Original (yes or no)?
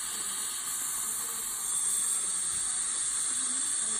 yes